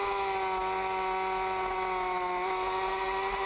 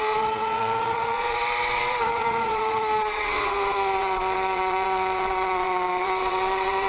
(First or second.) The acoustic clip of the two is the first